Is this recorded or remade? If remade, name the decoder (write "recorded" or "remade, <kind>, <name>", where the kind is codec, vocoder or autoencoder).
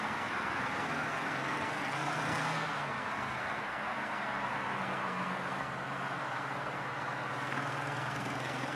remade, codec, SNAC